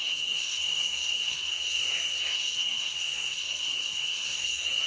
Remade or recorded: remade